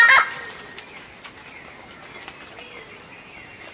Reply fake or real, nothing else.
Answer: real